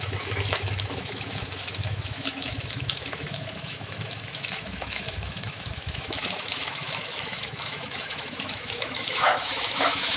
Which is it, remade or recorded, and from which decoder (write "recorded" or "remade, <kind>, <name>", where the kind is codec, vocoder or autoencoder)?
remade, autoencoder, DAC-VAE